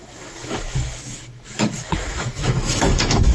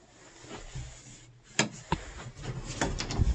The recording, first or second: second